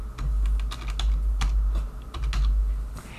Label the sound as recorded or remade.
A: recorded